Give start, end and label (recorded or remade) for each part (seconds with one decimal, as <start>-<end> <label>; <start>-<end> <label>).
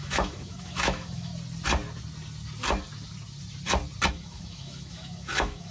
0.0-1.3 remade; 1.3-4.1 recorded; 4.1-5.7 remade